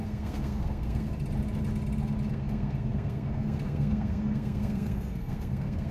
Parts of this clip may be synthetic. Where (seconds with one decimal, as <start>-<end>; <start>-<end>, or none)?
0.0-1.1; 2.3-5.9